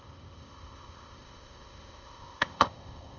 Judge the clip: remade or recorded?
remade